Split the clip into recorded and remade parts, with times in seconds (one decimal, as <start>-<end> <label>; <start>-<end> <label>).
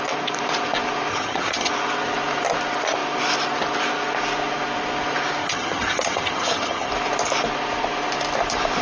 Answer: 0.0-1.1 recorded; 1.1-1.7 remade; 1.7-5.4 recorded; 5.4-6.9 remade; 6.9-8.8 recorded